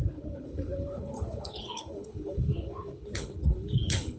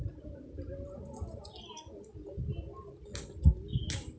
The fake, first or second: first